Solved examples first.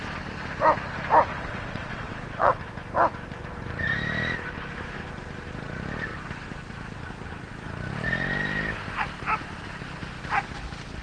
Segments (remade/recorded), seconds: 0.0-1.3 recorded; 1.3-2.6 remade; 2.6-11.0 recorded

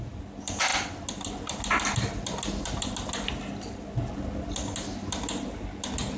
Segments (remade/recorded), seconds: 0.0-6.2 recorded

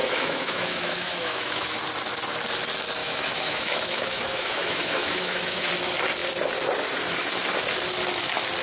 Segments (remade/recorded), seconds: 0.0-1.8 remade; 1.8-3.0 recorded; 3.0-5.7 remade; 5.7-8.6 recorded

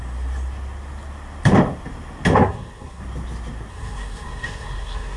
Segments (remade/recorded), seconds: 0.0-2.4 recorded; 2.4-3.0 remade; 3.0-3.7 recorded; 3.7-5.2 remade

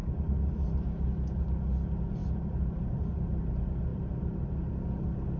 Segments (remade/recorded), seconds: 0.0-1.0 remade; 1.0-2.2 recorded; 2.2-3.5 remade; 3.5-3.9 recorded; 3.9-4.7 remade; 4.7-5.4 recorded

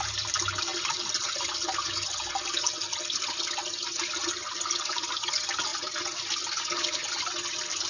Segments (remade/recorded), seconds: 0.0-0.7 remade; 0.7-2.3 recorded; 2.3-5.7 remade; 5.7-7.5 recorded; 7.5-7.9 remade

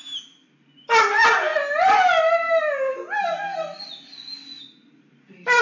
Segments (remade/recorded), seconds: 0.0-5.6 recorded

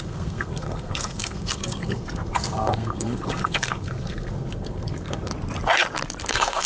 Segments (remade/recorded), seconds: 0.0-5.3 remade; 5.3-6.3 recorded; 6.3-6.7 remade